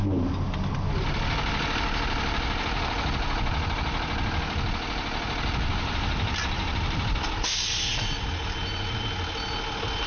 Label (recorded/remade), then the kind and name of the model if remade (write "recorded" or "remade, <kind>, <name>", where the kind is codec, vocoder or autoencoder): recorded